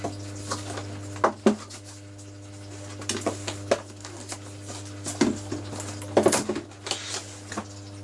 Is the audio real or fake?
real